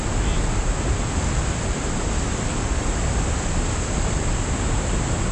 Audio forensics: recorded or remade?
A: recorded